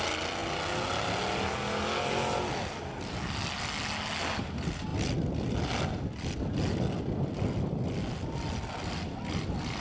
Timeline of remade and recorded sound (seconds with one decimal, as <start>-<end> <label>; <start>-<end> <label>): 0.0-9.8 recorded